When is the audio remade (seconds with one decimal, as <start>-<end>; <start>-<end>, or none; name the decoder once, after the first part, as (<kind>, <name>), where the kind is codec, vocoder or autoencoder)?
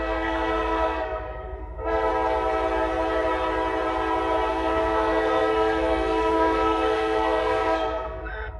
0.0-2.1 (codec, SNAC); 4.5-8.6